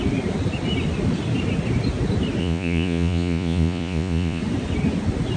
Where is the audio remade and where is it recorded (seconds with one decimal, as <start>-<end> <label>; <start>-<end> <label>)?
0.0-2.4 recorded; 2.4-4.4 remade; 4.4-5.4 recorded